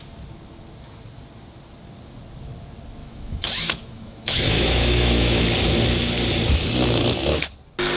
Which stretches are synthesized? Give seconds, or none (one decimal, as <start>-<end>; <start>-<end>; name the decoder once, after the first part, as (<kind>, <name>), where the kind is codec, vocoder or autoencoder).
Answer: 3.0-5.4 (autoencoder, DAC-VAE)